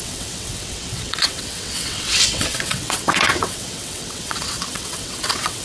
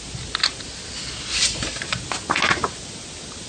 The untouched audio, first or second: second